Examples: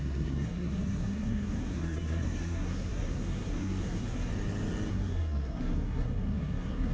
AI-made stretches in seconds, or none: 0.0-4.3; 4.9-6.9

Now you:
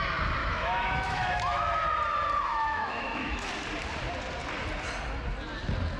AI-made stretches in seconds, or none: 0.4-1.7; 2.5-3.5

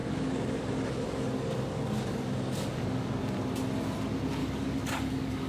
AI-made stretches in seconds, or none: 0.0-3.2; 4.4-5.5

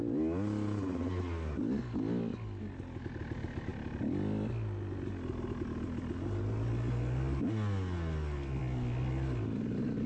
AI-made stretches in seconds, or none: none

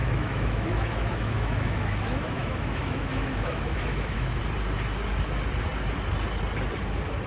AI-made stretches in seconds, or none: 0.0-4.4

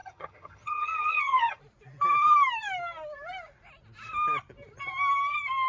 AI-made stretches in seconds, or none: 0.0-1.6

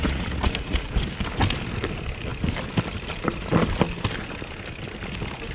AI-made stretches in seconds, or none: 0.0-0.9